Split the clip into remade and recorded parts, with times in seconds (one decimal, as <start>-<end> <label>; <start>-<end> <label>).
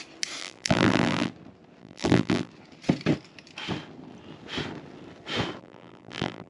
0.0-0.4 recorded; 0.4-1.3 remade; 1.3-1.8 recorded; 1.8-2.5 remade; 2.5-5.6 recorded; 5.6-6.5 remade